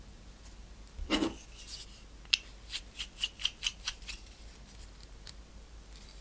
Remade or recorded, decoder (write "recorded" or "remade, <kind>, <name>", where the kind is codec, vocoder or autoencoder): recorded